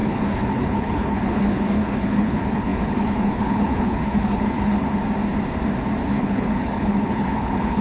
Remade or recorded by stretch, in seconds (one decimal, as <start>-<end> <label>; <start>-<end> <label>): 0.0-5.0 remade; 5.0-6.0 recorded; 6.0-7.8 remade